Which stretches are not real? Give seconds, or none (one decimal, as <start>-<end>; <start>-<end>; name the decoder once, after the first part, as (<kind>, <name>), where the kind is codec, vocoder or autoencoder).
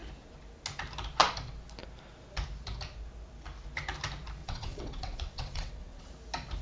4.4-6.1 (vocoder, WaveNeXt)